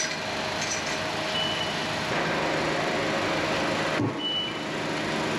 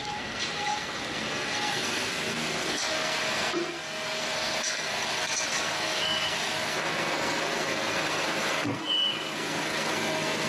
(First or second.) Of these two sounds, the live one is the first